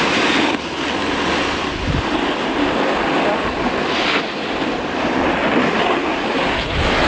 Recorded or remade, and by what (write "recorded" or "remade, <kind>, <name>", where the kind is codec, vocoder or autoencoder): recorded